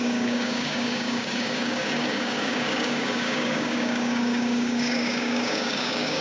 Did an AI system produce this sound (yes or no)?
yes